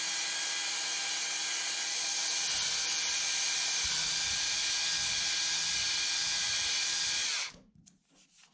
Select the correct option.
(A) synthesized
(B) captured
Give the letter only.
B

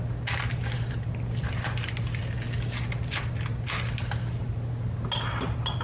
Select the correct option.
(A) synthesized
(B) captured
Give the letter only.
B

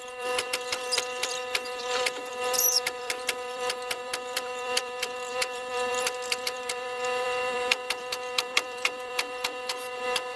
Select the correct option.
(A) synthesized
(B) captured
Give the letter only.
A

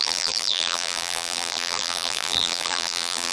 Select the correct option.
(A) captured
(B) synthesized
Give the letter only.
B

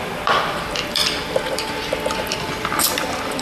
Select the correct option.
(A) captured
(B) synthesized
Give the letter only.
B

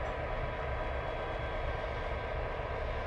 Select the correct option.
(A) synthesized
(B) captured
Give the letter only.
B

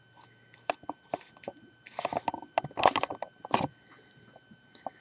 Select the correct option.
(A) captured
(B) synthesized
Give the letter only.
A